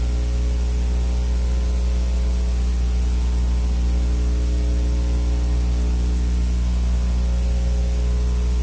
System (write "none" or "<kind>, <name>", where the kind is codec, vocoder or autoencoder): none